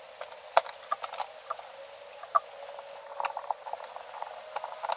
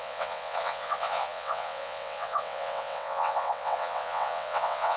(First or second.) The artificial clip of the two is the second